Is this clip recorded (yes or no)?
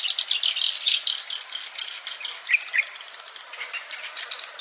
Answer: yes